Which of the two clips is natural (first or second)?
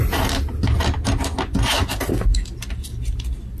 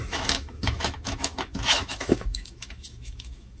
first